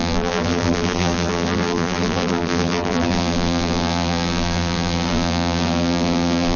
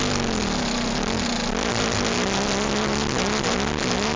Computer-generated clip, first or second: first